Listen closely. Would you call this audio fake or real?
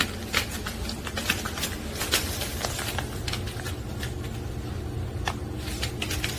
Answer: real